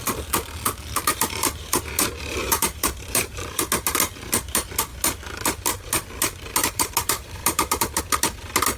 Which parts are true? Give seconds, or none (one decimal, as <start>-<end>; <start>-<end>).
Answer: 0.0-1.1; 1.9-2.4; 3.6-6.6; 8.0-8.8